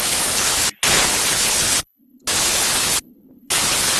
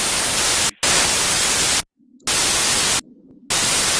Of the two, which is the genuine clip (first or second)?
second